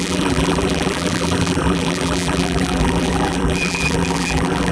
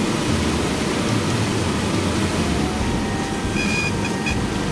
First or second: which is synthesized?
first